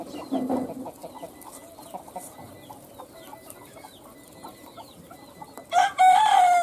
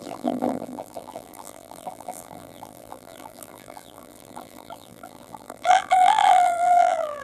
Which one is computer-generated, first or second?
second